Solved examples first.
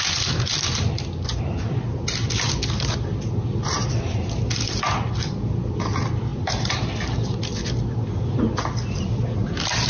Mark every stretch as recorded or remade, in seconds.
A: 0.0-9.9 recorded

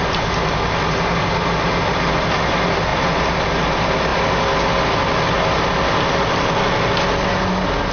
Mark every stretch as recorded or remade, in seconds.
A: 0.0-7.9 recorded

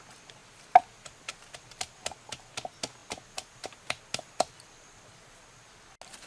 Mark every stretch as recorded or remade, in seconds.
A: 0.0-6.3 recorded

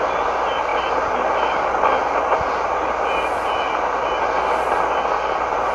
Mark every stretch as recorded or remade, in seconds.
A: 0.0-5.7 recorded

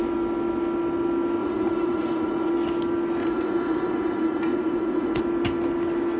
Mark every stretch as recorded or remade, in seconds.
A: 0.0-1.4 recorded; 1.4-2.5 remade; 2.5-3.2 recorded; 3.2-5.2 remade; 5.2-6.2 recorded